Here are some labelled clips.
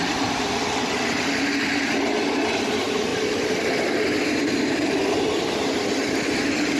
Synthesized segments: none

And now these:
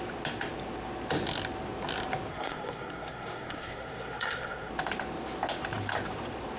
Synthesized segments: 2.3-4.7 (codec, SNAC)

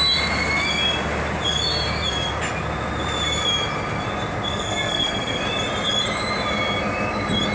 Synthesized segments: 4.5-5.4 (codec, SNAC)

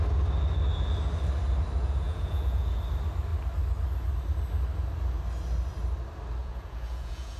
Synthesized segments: 1.8-2.8 (vocoder, Vocos); 6.4-7.4

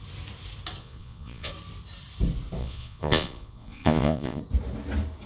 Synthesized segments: 0.8-1.5 (vocoder, Vocos); 2.6-4.4

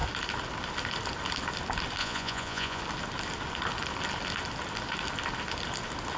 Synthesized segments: 2.0-2.8 (vocoder, Vocos)

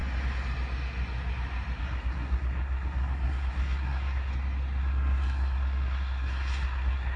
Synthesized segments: 1.8-4.3 (codec, SNAC); 4.8-7.2